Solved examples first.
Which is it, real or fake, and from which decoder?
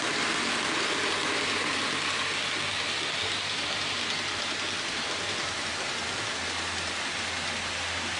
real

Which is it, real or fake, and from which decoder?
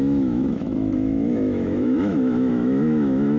fake, autoencoder, DAC-VAE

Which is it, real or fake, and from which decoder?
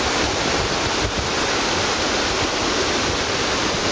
real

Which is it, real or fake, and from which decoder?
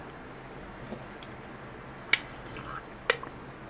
real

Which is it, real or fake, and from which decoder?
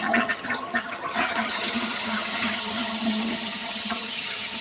fake, vocoder, HiFi-GAN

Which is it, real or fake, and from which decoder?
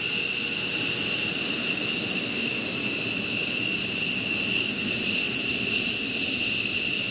real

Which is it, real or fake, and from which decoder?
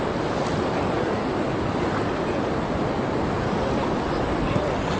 real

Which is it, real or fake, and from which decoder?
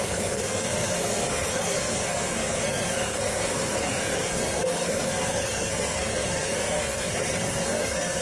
fake, codec, SNAC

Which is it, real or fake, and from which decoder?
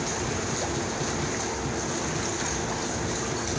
real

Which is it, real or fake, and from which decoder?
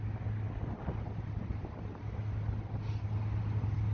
real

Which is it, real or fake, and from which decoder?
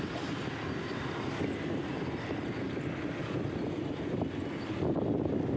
real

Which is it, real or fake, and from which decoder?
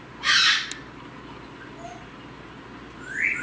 real